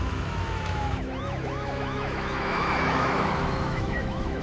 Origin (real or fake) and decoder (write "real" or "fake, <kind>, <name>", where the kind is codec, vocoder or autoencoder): fake, autoencoder, DAC-VAE